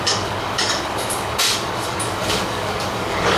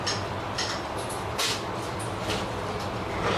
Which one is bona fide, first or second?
second